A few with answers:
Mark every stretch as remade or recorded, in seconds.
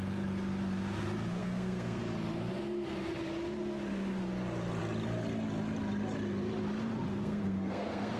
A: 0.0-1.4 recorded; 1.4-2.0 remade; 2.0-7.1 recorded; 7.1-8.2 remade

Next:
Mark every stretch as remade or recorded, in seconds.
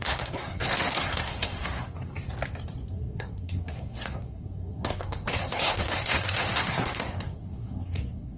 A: 0.0-2.1 remade; 2.1-2.9 recorded; 2.9-8.4 remade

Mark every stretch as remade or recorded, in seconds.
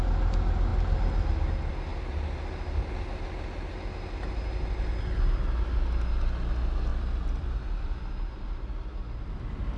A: 0.0-6.9 recorded; 6.9-7.6 remade; 7.6-9.8 recorded